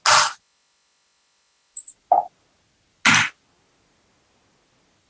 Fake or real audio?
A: real